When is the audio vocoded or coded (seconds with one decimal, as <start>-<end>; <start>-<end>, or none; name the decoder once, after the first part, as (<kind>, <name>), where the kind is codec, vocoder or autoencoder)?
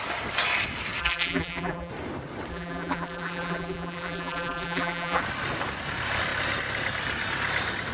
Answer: 1.0-1.9 (vocoder, BigVGAN v2); 2.5-5.2